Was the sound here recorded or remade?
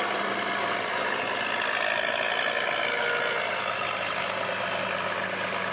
recorded